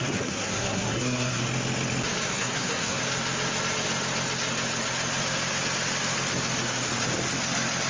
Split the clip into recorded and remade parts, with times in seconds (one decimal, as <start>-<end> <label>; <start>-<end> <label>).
0.0-1.4 remade; 1.4-2.3 recorded; 2.3-3.0 remade; 3.0-7.9 recorded